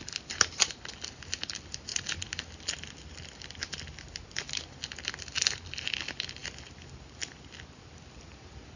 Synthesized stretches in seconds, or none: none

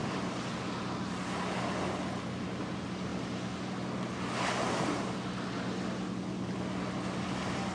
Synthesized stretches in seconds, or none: none

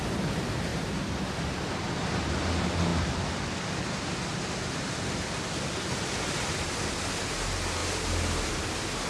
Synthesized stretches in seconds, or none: none